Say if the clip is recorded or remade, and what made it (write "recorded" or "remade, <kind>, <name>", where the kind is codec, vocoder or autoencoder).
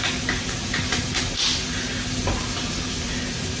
recorded